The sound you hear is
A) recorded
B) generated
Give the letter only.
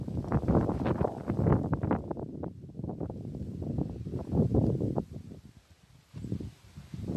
A